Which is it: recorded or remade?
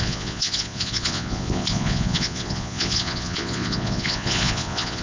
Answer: remade